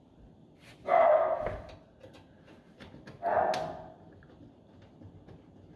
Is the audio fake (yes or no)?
no